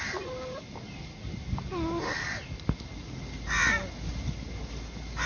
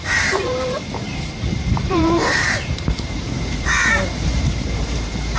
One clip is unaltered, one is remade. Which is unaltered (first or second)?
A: first